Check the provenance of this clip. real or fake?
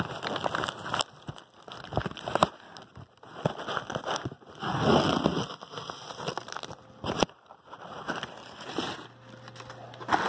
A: real